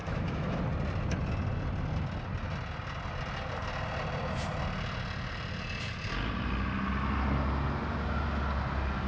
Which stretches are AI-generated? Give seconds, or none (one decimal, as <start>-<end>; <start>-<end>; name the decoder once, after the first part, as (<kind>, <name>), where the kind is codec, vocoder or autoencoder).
0.0-0.6 (autoencoder, DAC-VAE)